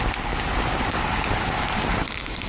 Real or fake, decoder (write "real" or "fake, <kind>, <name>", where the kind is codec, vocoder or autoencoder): real